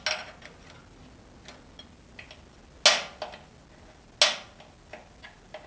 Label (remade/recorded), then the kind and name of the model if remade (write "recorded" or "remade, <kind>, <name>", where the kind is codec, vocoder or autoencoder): recorded